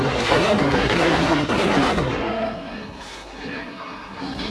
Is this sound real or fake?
fake